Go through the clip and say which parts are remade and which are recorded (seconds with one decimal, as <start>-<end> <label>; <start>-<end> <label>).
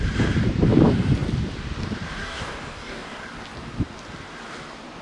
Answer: 0.0-2.2 recorded; 2.2-3.2 remade; 3.2-5.0 recorded